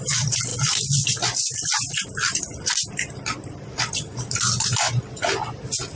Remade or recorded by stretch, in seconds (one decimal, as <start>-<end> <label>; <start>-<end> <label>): 0.0-0.5 recorded; 0.5-3.9 remade; 3.9-6.0 recorded